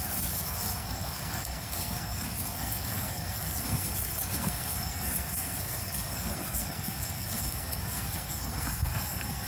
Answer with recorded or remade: remade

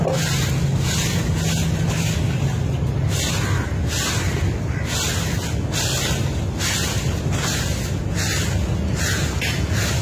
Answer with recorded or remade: recorded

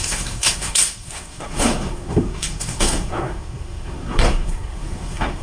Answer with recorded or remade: remade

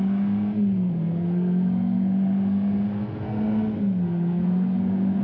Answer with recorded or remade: remade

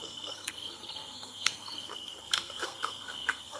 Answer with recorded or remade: remade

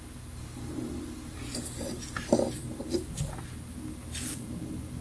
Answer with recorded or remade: recorded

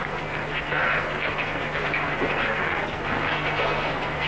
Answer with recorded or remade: remade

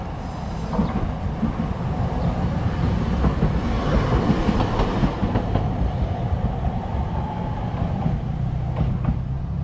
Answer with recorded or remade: recorded